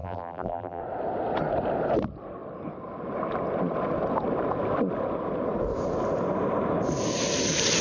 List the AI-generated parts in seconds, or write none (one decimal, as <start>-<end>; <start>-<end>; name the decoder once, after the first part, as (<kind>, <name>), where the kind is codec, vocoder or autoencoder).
0.0-0.8 (vocoder, BigVGAN v2)

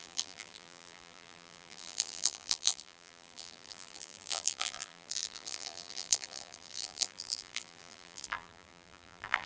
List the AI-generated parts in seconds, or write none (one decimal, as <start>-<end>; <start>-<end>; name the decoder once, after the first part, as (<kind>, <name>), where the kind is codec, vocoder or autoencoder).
0.0-9.5 (vocoder, BigVGAN v2)

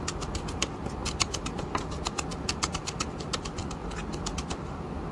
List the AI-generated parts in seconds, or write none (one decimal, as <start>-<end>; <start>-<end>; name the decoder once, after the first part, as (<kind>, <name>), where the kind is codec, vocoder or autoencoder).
1.0-1.8 (vocoder, BigVGAN v2); 2.3-3.0